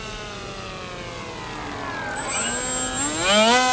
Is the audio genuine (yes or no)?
yes